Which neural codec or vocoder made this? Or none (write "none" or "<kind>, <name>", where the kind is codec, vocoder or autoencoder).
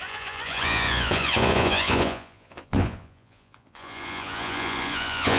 vocoder, Vocos